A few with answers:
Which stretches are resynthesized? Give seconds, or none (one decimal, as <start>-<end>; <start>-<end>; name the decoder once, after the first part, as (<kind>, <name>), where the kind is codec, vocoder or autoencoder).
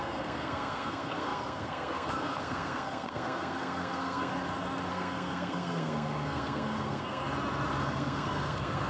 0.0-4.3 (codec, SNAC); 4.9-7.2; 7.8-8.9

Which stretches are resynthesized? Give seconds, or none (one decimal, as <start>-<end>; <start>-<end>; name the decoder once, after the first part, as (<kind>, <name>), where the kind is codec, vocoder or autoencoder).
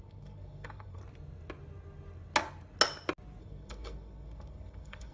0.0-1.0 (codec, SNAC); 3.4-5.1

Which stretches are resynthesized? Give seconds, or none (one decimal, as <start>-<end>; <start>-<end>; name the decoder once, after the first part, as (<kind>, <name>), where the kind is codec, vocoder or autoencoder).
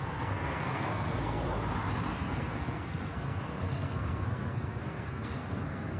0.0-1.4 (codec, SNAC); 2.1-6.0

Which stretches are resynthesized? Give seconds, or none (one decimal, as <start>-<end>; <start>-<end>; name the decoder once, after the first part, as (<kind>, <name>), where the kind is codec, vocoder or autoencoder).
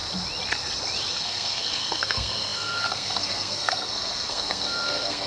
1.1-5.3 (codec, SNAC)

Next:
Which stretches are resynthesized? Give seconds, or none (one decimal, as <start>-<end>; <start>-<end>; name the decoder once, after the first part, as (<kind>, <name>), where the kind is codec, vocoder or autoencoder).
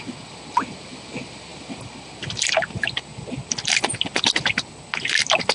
none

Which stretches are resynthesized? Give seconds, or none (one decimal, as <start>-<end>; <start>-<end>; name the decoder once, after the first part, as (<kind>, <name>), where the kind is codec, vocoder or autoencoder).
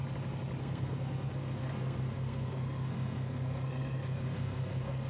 0.6-5.1 (codec, SNAC)